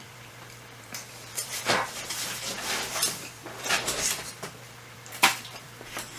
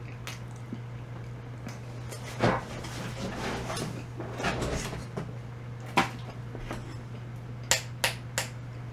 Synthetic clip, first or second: first